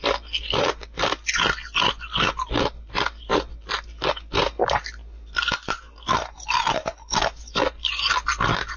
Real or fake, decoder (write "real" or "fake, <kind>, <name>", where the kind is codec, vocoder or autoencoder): real